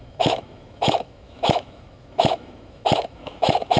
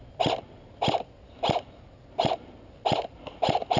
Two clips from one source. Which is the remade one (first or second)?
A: first